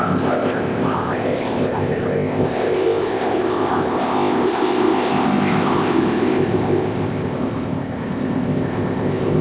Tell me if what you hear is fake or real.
fake